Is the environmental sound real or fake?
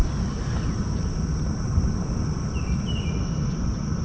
real